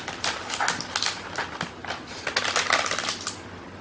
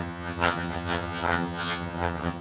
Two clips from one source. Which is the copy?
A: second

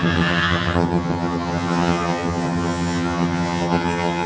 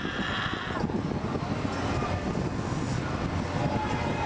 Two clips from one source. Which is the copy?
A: first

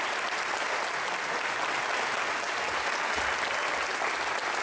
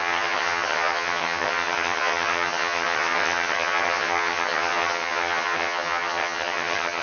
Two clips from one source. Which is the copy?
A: second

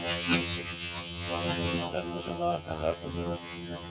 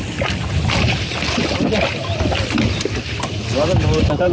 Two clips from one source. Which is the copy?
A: first